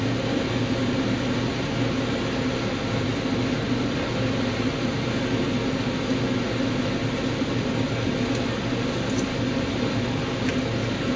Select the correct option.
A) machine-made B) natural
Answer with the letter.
B